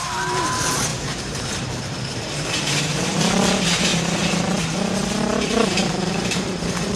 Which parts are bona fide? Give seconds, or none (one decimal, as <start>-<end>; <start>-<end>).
3.9-5.1